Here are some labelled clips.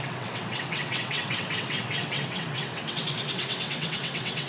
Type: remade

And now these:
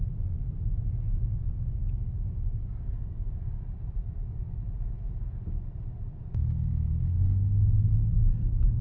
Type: recorded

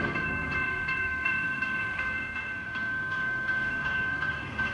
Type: remade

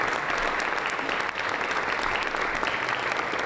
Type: recorded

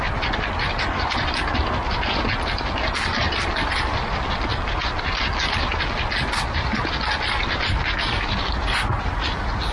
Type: recorded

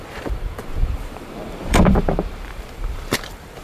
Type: remade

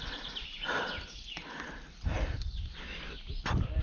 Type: recorded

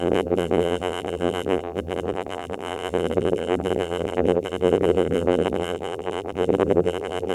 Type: remade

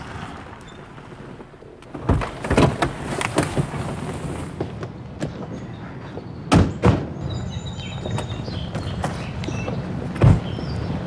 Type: recorded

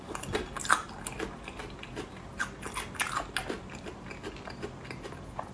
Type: recorded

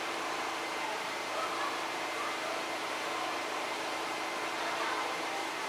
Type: remade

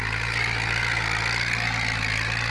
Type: recorded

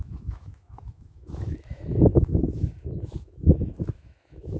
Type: remade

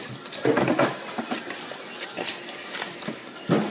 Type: remade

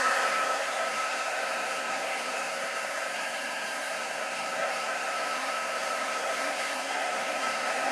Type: remade